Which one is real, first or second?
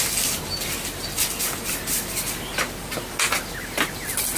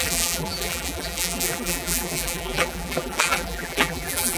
first